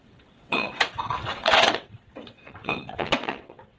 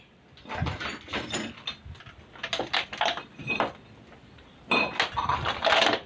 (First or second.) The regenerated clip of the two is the first